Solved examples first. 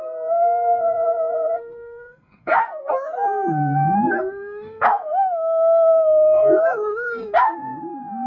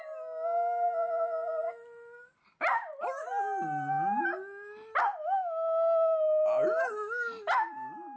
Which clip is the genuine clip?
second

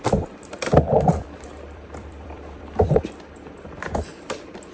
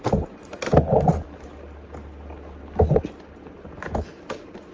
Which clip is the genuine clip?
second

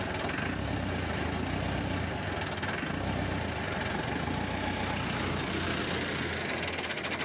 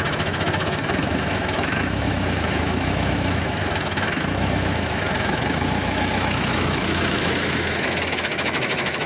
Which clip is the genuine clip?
first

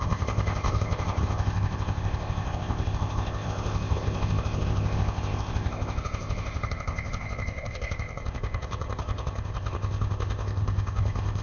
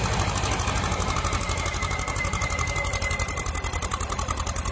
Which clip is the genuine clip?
second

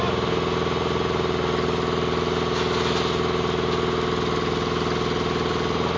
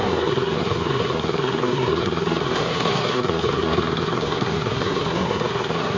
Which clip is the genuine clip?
first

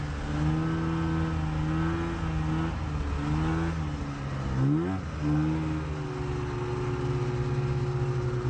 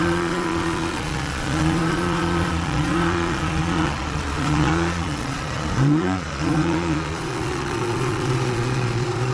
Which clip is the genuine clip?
first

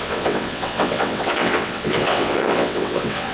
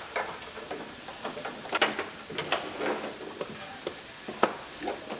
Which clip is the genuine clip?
second